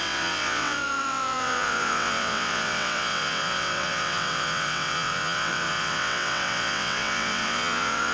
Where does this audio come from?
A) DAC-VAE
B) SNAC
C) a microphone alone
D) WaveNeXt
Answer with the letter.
D